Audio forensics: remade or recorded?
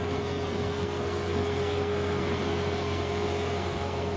remade